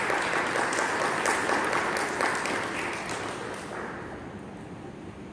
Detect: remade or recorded recorded